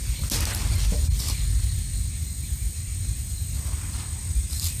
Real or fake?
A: real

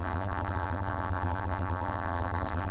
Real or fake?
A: fake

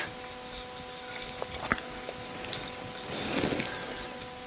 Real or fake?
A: real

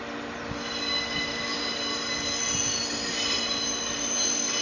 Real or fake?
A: real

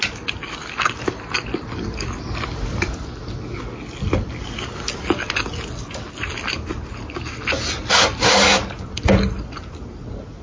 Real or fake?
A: real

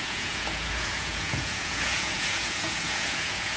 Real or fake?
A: fake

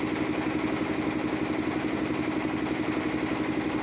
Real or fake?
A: real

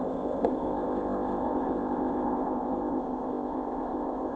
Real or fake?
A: fake